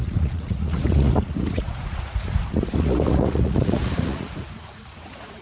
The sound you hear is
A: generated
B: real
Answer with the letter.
A